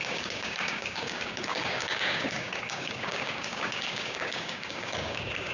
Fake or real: fake